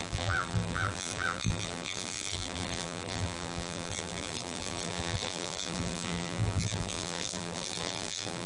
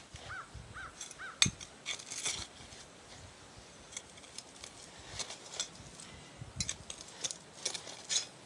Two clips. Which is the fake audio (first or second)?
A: first